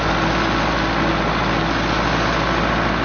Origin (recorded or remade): recorded